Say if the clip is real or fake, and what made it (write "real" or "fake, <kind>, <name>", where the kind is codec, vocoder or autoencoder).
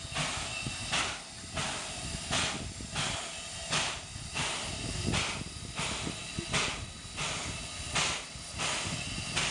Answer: real